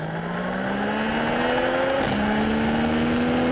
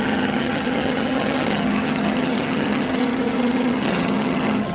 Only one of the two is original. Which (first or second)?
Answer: first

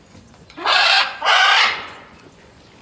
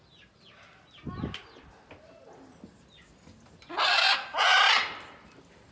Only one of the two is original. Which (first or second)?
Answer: second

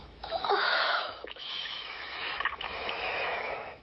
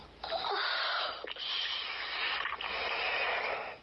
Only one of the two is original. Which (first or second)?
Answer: second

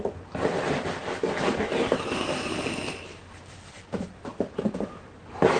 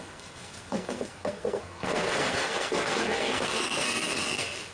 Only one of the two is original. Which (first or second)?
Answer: first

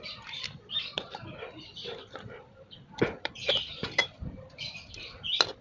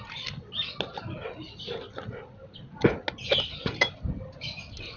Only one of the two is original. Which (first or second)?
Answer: second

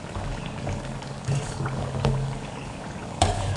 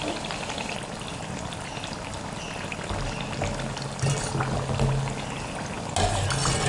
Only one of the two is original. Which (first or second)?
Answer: second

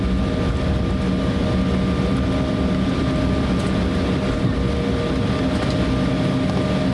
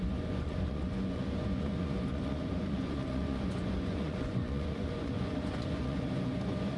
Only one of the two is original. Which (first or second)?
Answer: first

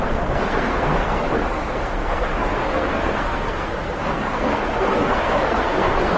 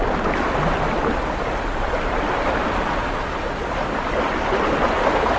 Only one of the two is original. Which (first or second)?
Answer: second